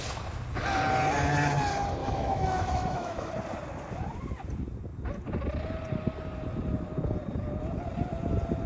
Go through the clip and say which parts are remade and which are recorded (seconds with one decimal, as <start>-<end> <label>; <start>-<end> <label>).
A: 0.0-2.0 recorded; 2.0-3.3 remade; 3.3-8.7 recorded